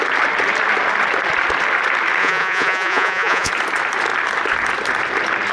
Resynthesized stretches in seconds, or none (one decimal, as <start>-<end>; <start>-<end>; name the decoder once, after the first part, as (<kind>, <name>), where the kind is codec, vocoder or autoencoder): 2.2-3.5 (vocoder, Vocos)